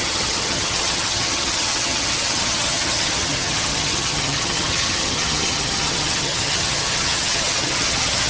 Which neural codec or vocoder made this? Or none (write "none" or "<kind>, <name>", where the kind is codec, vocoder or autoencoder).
vocoder, HiFi-GAN